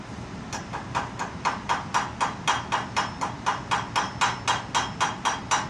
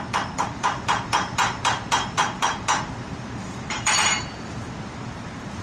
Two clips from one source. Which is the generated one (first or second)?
second